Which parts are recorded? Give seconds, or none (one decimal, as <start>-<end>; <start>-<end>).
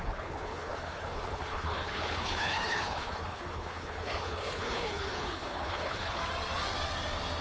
6.2-7.4